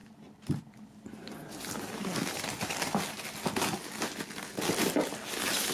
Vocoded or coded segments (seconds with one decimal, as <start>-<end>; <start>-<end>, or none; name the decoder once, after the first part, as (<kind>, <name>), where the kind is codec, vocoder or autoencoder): none